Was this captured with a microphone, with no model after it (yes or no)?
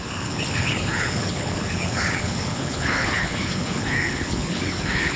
no